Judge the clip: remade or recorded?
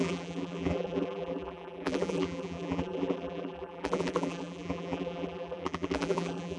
remade